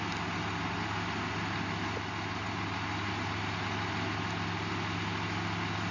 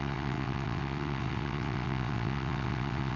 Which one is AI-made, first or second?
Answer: second